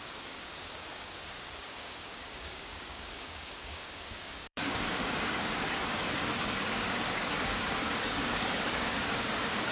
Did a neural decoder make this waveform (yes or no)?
yes